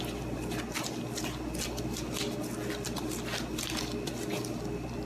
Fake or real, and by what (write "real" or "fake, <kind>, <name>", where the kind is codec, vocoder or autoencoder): real